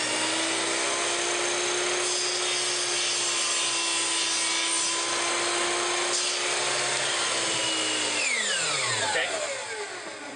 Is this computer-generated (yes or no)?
no